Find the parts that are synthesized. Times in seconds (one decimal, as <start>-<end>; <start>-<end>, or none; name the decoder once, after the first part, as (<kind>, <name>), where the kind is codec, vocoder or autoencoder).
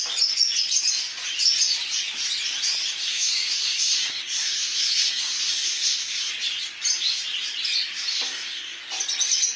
3.0-6.3 (codec, SNAC); 8.1-8.8